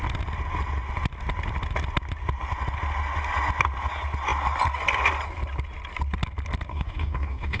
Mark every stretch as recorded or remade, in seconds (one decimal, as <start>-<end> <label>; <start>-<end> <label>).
0.0-6.7 recorded; 6.7-7.6 remade